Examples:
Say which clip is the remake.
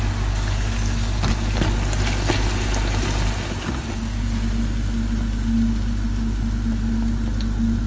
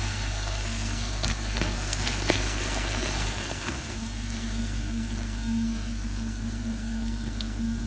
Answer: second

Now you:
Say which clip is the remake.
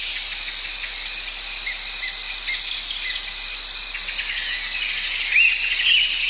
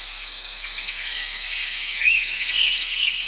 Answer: second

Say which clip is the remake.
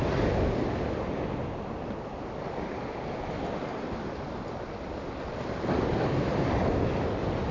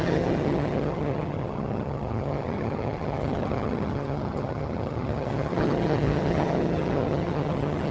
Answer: second